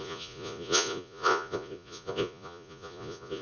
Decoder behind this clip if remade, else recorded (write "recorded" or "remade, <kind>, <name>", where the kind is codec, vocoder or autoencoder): remade, vocoder, Vocos